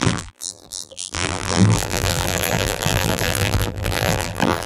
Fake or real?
fake